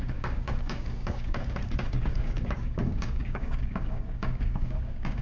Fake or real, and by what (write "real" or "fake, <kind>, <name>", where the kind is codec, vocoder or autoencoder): fake, codec, DAC